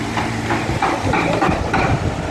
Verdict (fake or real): real